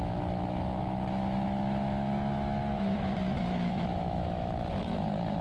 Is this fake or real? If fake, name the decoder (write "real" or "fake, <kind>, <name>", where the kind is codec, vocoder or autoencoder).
fake, autoencoder, DAC-VAE